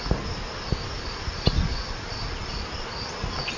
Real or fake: real